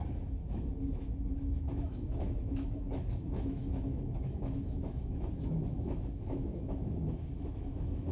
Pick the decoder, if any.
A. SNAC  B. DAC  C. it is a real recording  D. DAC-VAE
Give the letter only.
D